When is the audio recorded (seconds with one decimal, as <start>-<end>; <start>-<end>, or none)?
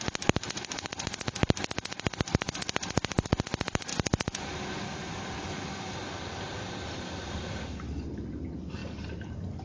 0.0-9.6